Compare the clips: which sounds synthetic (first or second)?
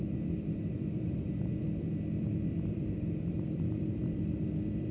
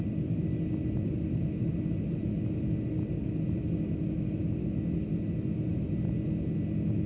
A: first